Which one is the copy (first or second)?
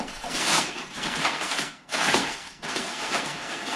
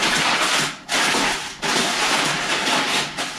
first